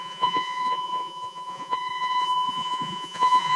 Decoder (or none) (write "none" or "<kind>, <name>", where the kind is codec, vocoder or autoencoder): vocoder, Vocos